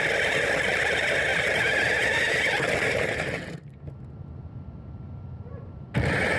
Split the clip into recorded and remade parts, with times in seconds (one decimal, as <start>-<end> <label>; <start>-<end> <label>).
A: 0.0-1.3 recorded; 1.3-2.4 remade; 2.4-5.3 recorded; 5.3-6.0 remade; 6.0-6.4 recorded